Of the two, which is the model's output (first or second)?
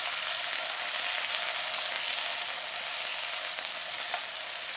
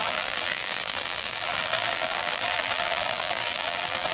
second